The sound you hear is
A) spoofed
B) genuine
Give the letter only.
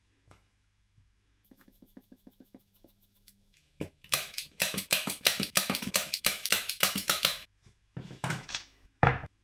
A